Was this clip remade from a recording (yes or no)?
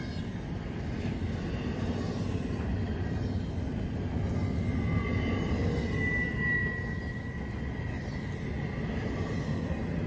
no